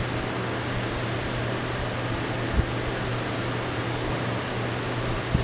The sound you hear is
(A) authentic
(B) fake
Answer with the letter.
A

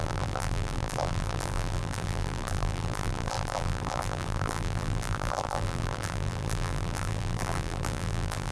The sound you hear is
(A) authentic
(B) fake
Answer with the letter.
B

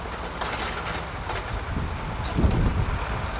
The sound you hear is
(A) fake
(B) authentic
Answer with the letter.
B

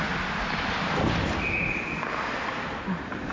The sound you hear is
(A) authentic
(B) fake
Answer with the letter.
A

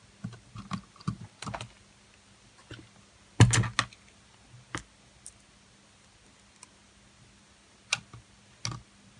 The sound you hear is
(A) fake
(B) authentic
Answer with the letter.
B